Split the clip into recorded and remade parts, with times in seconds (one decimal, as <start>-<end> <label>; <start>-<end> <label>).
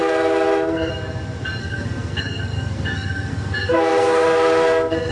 0.0-0.9 remade; 0.9-1.6 recorded; 1.6-5.1 remade